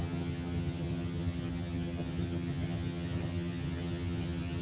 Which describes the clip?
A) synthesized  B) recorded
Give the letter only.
A